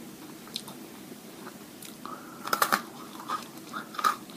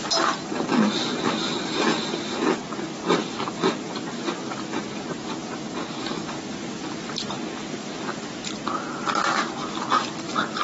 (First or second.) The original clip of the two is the second